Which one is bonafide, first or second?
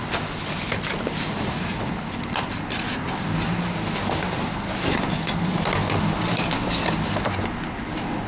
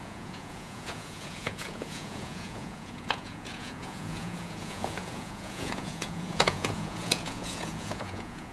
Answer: first